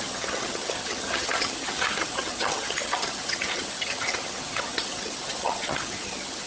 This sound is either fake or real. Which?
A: fake